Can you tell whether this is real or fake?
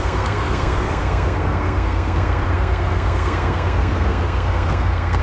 fake